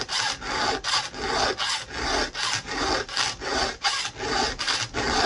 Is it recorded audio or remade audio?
recorded